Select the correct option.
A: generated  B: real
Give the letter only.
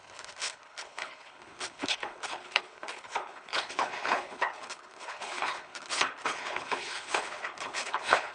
A